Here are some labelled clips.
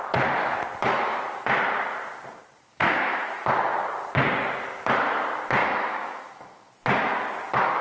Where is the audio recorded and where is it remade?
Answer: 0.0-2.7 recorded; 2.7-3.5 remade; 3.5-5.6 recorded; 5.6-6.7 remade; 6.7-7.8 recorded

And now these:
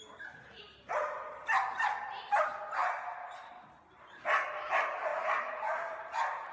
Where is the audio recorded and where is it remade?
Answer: 0.0-6.5 recorded

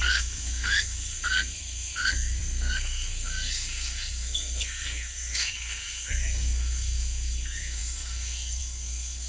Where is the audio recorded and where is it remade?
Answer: 0.0-9.3 remade

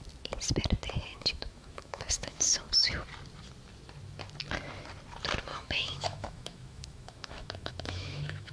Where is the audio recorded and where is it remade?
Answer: 0.0-1.1 recorded; 1.1-2.6 remade; 2.6-5.5 recorded; 5.5-8.5 remade

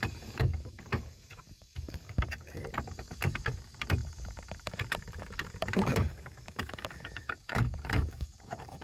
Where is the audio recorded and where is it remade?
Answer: 0.0-8.8 remade

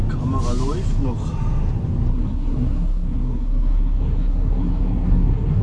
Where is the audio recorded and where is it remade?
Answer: 0.0-2.1 recorded; 2.1-5.6 remade

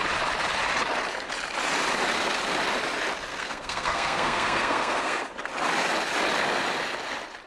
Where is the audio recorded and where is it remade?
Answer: 0.0-3.3 recorded; 3.3-5.2 remade; 5.2-7.5 recorded

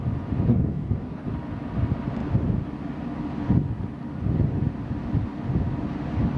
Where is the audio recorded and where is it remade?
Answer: 0.0-0.5 recorded; 0.5-1.2 remade; 1.2-6.4 recorded